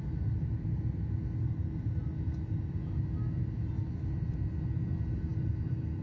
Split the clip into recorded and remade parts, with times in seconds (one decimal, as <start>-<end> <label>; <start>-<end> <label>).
0.0-6.0 recorded